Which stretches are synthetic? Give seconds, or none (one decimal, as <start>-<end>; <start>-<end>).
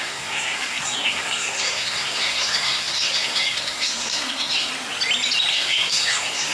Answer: 0.0-4.7; 5.5-6.5